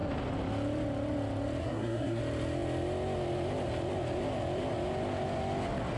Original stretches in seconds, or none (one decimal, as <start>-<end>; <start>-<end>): 0.0-1.6; 2.2-6.0